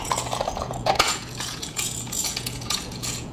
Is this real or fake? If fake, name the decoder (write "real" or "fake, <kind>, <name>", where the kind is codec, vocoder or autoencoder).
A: fake, vocoder, Vocos